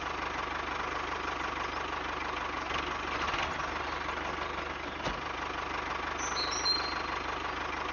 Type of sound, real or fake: real